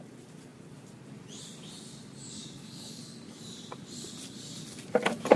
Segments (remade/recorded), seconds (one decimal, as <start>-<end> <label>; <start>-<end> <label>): 0.0-2.2 recorded; 2.2-3.0 remade; 3.0-5.4 recorded